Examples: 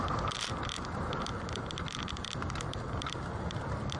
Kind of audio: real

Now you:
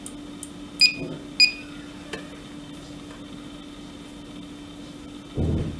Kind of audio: real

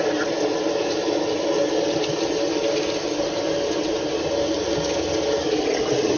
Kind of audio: real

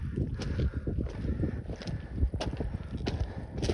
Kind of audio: real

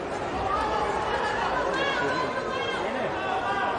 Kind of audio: real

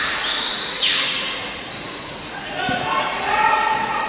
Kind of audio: fake